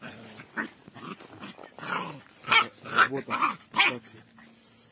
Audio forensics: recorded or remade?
recorded